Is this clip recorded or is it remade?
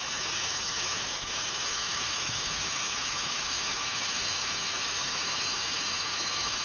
remade